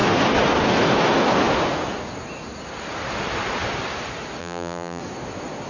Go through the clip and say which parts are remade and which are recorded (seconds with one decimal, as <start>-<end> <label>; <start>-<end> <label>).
0.0-4.4 recorded; 4.4-5.0 remade; 5.0-5.7 recorded